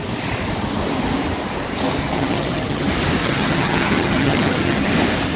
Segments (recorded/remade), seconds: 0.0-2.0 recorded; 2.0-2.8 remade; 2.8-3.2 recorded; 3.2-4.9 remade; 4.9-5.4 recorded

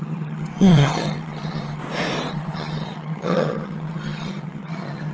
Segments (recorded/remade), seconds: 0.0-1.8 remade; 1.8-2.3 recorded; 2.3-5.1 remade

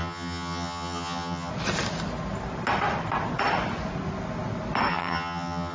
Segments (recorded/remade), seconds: 0.0-1.5 remade; 1.5-4.9 recorded; 4.9-5.7 remade